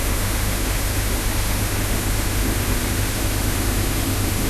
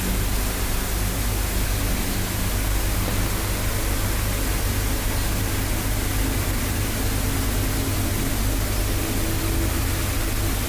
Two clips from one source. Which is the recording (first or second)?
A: second